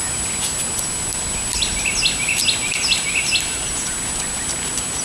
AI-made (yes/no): no